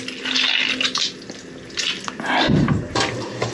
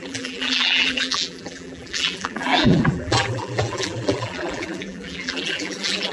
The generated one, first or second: second